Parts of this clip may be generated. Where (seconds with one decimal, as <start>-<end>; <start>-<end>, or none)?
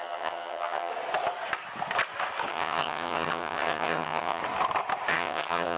0.0-0.9; 2.5-4.4; 5.1-5.8